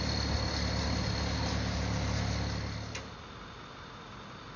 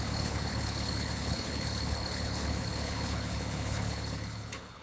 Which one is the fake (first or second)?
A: second